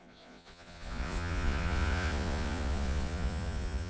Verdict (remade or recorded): remade